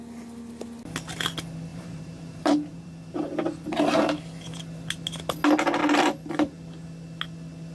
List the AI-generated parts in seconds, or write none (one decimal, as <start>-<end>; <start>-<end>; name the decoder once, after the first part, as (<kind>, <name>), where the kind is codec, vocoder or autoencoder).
1.7-4.0 (vocoder, BigVGAN v2); 5.8-6.6